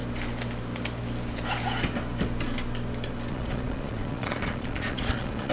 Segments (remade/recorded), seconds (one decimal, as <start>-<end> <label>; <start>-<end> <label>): 0.0-3.3 recorded; 3.3-5.5 remade